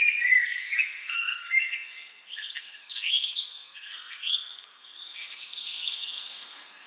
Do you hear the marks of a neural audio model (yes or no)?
yes